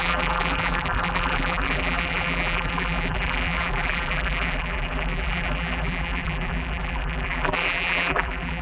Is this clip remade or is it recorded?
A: remade